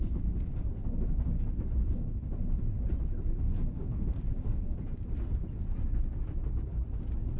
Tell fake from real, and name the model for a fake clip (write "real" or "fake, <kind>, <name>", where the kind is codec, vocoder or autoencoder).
real